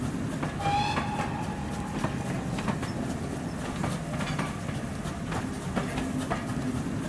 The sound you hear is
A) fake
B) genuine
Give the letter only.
B